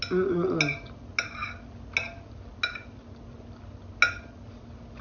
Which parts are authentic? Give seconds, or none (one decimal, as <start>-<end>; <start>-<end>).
0.0-5.0